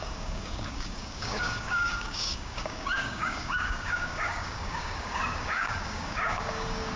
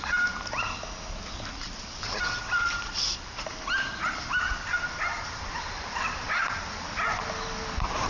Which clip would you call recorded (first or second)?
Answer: second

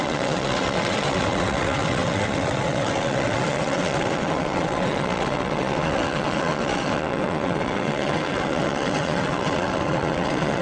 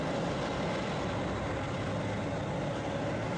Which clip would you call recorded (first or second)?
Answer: second